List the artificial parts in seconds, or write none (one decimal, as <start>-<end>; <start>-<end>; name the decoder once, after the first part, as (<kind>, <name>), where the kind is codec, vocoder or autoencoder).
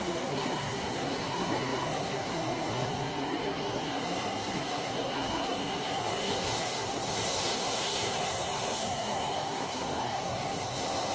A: 0.0-11.1 (codec, SNAC)